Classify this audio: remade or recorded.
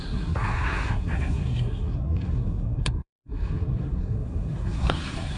remade